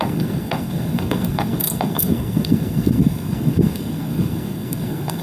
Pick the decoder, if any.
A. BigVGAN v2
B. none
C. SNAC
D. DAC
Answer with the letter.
C